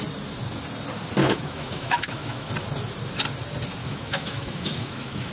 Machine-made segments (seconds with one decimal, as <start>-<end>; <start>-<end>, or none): 1.2-2.5; 3.8-5.3